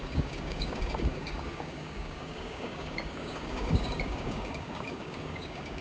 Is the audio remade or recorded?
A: remade